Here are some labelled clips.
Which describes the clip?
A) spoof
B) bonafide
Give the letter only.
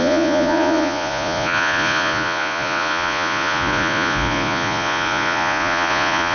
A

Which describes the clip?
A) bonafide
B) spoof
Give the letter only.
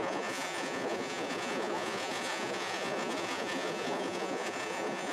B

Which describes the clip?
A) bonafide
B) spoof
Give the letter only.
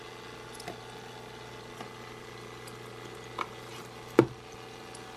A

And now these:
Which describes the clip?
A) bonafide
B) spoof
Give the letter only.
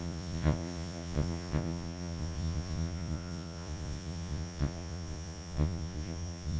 B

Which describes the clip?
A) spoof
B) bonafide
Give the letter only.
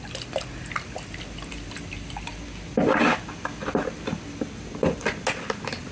B